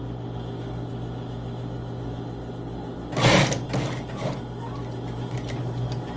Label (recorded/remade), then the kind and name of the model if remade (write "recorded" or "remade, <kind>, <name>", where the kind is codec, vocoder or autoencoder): recorded